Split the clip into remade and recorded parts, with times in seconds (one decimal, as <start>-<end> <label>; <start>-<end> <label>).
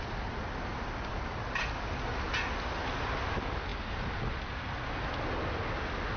0.0-6.2 recorded